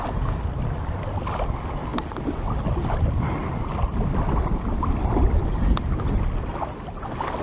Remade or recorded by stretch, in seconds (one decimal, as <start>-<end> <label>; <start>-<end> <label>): 0.0-7.4 recorded